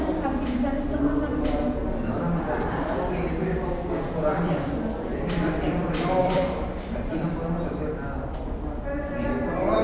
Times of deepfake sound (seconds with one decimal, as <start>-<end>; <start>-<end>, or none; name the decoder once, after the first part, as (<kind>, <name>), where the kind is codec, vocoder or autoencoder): 4.3-7.3 (vocoder, BigVGAN v2)